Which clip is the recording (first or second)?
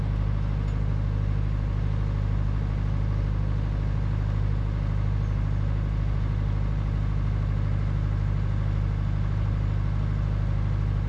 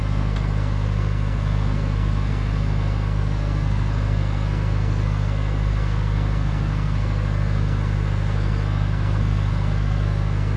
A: first